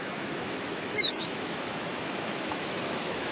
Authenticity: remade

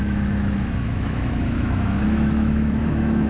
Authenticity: remade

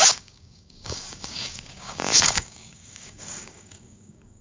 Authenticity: remade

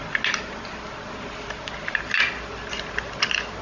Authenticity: recorded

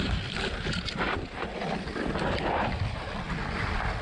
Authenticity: recorded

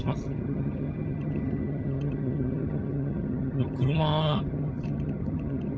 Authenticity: remade